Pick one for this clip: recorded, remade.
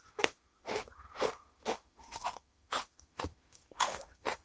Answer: remade